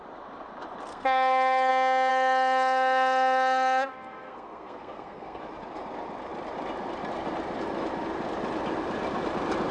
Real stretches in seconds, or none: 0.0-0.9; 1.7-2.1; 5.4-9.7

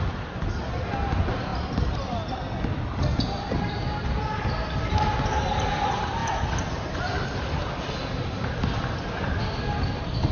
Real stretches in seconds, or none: 0.0-10.3

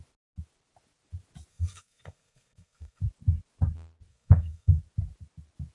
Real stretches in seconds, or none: 0.0-1.5; 3.0-4.1; 4.8-5.7

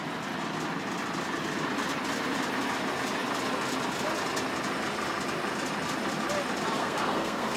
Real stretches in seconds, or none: 0.0-6.8